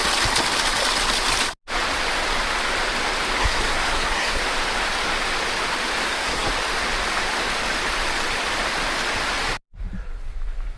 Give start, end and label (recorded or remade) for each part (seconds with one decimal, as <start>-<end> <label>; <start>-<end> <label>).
0.0-3.4 recorded; 3.4-4.4 remade; 4.4-6.0 recorded; 6.0-6.5 remade; 6.5-10.8 recorded